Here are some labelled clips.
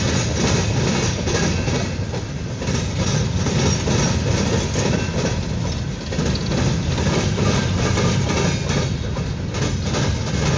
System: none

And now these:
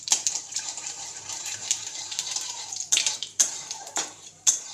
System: vocoder, BigVGAN v2